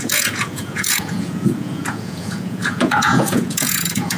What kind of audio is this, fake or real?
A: fake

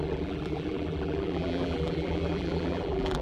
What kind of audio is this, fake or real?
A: fake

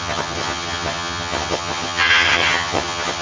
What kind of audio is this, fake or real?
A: fake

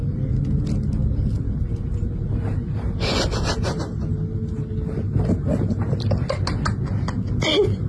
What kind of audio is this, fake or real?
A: real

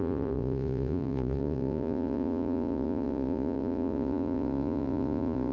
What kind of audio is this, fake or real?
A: fake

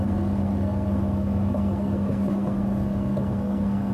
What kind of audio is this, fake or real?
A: fake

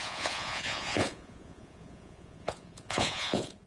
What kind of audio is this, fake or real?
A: fake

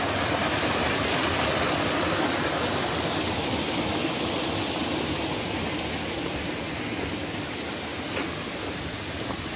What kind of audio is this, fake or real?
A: real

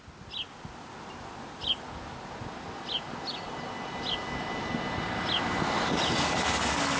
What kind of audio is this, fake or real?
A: real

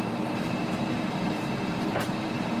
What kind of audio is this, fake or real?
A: fake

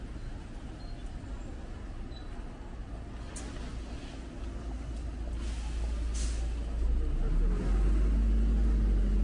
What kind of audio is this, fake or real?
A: real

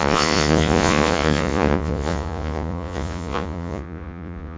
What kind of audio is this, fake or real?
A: fake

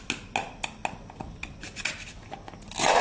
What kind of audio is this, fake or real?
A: real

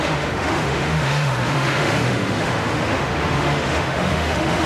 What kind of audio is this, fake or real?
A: fake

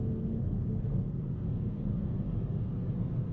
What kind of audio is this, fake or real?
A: fake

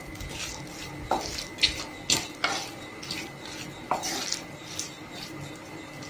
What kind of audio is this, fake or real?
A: real